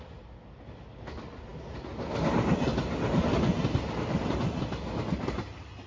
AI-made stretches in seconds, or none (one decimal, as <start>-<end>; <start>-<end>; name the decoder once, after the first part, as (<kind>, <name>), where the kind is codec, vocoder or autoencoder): none